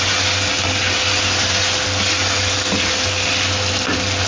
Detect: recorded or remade recorded